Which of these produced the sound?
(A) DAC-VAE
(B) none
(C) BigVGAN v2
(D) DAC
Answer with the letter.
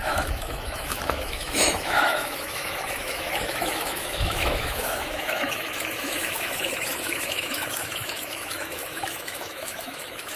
A